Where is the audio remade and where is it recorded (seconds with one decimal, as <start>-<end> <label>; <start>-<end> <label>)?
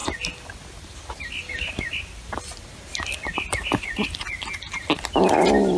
0.0-5.8 recorded